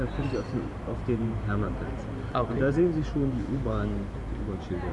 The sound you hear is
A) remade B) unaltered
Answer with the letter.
A